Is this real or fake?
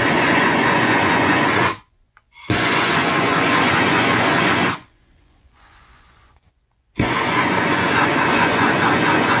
fake